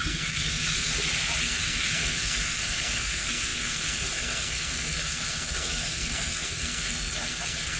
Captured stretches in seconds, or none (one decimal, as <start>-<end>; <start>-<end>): 0.9-1.4